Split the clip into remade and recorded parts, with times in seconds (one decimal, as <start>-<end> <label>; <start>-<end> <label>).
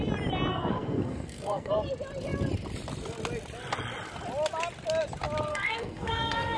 0.0-0.5 recorded; 0.5-1.7 remade; 1.7-5.5 recorded; 5.5-6.6 remade